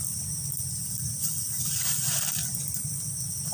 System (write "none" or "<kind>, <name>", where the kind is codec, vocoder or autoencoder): none